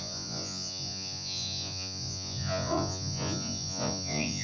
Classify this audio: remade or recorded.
remade